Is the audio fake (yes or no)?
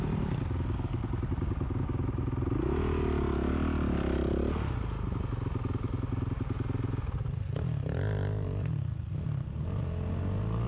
no